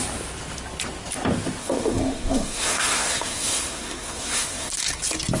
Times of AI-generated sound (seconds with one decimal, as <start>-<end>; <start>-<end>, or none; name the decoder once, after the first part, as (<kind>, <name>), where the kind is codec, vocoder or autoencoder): 1.6-4.7 (codec, SNAC)